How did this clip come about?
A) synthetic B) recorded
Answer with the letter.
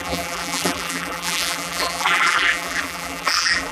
A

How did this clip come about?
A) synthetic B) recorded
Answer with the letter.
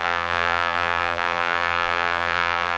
A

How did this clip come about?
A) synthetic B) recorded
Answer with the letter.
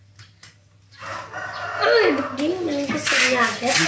B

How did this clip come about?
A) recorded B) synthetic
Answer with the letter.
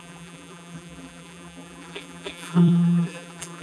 B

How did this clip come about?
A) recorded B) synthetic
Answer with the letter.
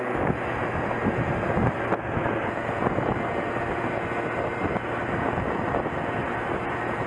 A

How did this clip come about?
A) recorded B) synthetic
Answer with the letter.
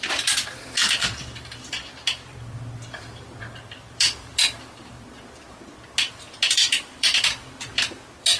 B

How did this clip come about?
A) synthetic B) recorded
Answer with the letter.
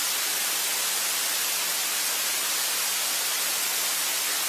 B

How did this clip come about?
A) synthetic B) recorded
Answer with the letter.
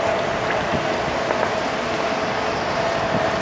B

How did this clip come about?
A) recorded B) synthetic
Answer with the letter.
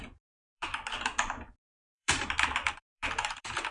B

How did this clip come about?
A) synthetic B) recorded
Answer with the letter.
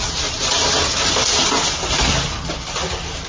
A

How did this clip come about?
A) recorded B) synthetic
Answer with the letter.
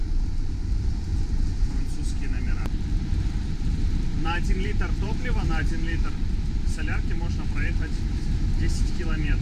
B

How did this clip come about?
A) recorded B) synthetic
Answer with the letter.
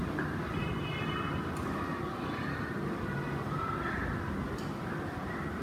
A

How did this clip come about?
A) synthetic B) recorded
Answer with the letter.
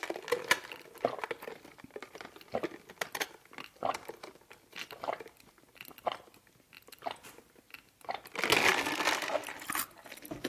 B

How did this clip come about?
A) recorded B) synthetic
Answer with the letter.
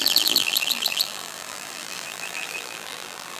B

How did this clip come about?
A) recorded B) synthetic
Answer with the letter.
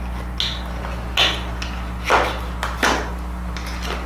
A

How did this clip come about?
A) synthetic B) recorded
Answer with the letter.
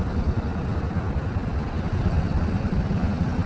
A